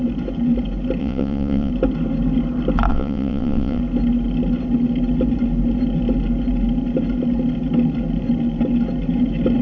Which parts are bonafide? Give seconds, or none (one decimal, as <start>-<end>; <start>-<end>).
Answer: 0.0-1.0; 1.7-2.9; 3.8-9.6